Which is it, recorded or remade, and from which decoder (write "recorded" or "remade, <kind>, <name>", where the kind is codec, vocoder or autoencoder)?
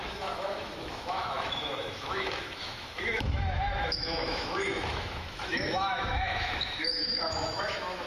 remade, autoencoder, DAC-VAE